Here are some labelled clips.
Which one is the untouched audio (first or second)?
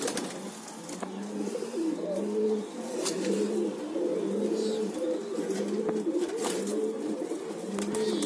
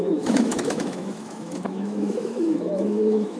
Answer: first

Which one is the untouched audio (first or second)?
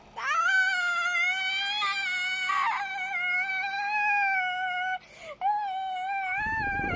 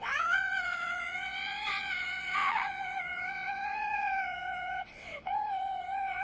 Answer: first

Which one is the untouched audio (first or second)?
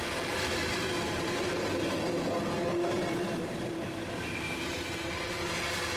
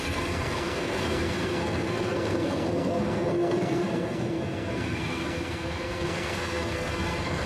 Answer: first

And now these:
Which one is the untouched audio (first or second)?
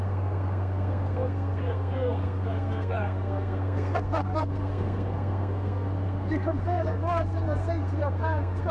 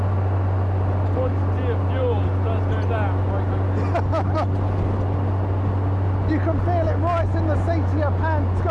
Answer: second